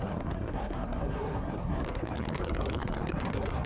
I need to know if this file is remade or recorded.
remade